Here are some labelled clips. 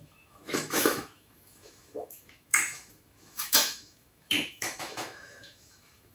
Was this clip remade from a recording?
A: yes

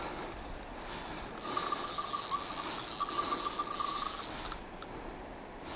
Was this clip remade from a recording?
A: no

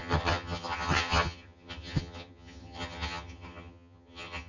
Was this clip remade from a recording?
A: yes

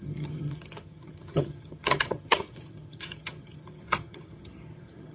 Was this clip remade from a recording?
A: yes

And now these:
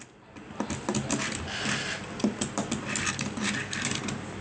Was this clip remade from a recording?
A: yes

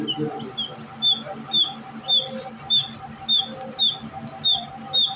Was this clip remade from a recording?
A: no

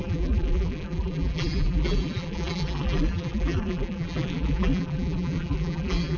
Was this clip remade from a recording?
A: yes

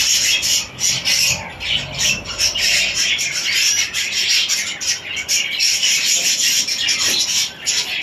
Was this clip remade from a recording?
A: no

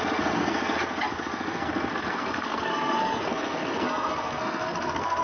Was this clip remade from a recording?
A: yes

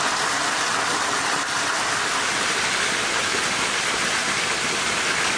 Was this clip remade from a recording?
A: no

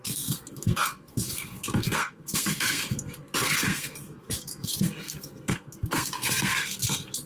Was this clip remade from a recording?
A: yes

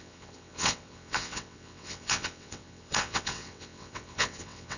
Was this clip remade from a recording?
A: yes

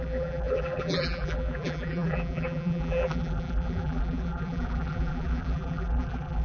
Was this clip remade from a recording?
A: yes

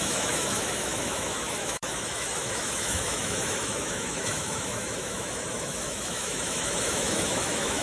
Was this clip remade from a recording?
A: yes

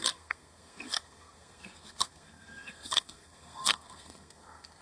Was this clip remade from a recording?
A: yes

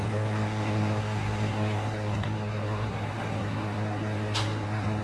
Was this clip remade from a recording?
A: yes